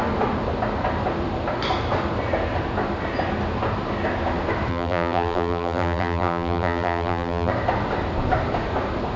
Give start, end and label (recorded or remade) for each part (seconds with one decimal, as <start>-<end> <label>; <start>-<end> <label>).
0.0-4.7 recorded; 4.7-7.5 remade; 7.5-9.2 recorded